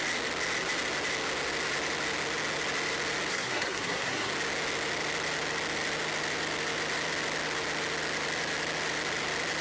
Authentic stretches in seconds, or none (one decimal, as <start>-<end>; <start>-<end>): 0.0-3.3; 4.3-9.6

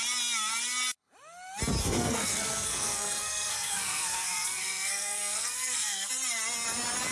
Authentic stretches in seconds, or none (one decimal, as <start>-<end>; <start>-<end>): 0.0-1.8; 6.1-7.1